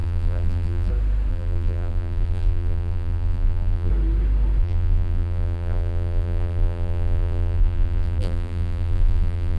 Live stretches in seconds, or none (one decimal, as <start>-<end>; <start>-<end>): 0.9-1.3; 3.9-4.6